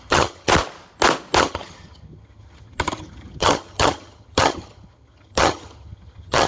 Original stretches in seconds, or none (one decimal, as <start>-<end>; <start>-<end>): 0.5-1.4